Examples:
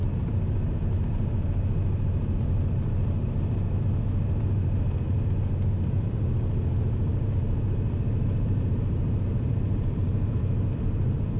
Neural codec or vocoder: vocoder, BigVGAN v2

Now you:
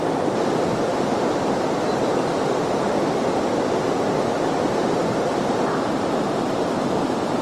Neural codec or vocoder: vocoder, BigVGAN v2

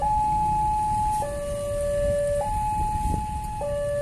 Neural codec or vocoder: none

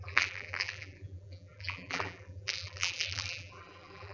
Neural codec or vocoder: vocoder, BigVGAN v2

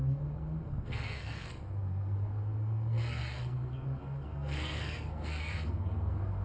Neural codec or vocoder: codec, SNAC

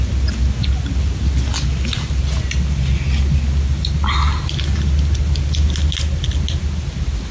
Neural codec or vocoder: none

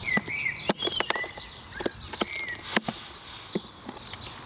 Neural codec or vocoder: none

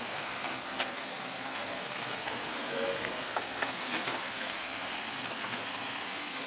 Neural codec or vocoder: codec, SNAC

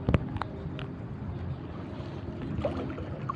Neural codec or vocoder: none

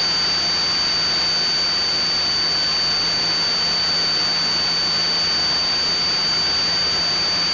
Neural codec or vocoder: none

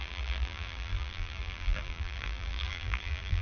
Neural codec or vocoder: vocoder, BigVGAN v2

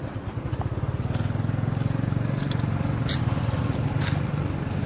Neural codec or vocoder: none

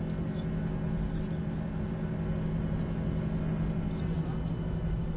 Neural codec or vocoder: none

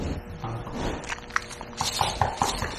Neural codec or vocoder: none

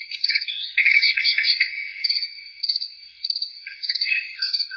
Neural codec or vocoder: codec, SNAC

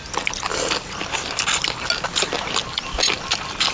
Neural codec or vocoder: none